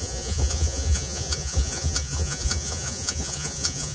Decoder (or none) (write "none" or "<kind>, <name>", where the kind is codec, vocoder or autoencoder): vocoder, Vocos